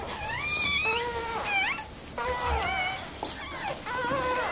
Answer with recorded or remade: recorded